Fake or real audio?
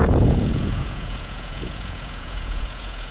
fake